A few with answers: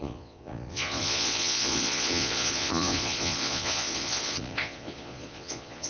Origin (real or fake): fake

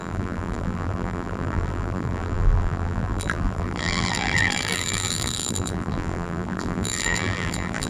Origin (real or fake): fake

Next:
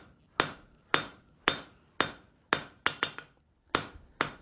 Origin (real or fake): real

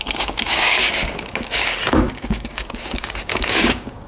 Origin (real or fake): fake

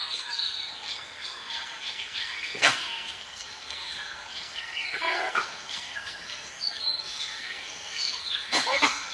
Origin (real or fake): fake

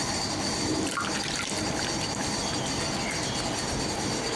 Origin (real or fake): real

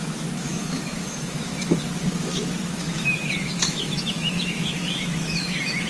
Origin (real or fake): fake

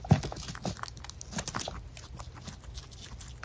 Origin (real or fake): real